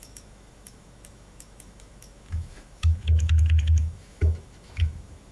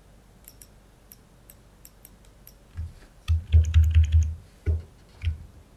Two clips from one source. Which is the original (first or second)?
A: second